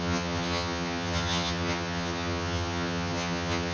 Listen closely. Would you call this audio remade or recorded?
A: remade